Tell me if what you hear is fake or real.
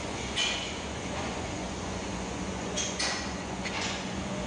fake